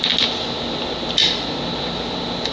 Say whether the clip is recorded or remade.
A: recorded